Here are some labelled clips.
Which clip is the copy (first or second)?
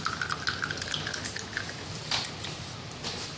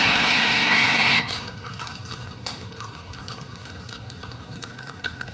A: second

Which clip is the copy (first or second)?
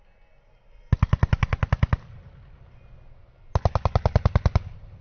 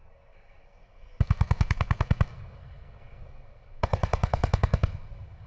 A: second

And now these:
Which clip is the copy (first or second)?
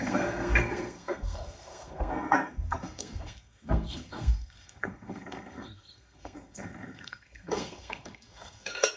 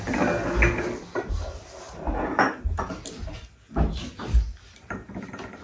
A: first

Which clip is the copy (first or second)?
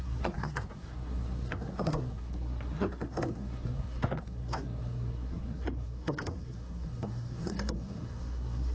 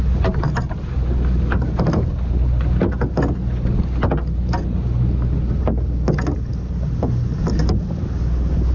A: first